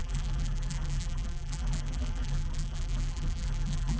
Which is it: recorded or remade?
remade